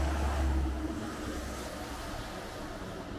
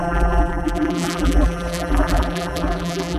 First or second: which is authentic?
first